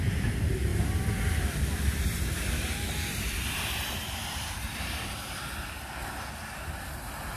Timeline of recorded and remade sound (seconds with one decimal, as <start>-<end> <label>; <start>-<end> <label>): 0.0-0.7 recorded; 0.7-5.0 remade; 5.0-7.4 recorded